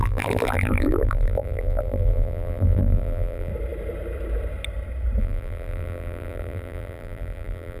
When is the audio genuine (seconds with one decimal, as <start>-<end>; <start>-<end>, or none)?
3.5-5.2